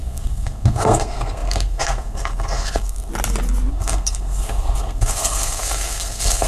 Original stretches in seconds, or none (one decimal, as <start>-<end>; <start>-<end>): 3.1-3.7